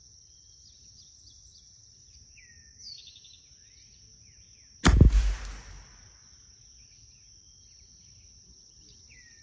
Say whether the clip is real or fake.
real